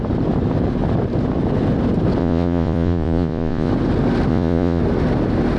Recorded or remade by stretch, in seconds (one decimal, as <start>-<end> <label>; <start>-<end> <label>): 0.0-2.2 recorded; 2.2-3.7 remade; 3.7-4.3 recorded; 4.3-4.8 remade; 4.8-5.6 recorded